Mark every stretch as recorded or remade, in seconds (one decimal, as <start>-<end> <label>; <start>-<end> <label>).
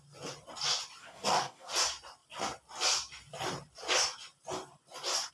0.0-1.0 recorded; 1.0-1.7 remade; 1.7-5.3 recorded